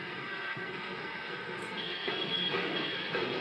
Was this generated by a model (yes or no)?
yes